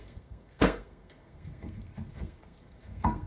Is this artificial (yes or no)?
yes